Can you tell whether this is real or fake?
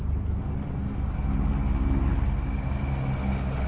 real